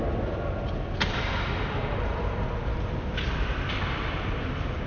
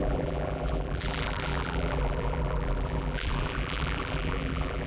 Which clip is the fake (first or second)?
second